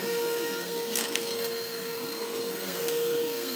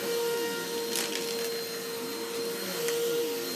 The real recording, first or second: second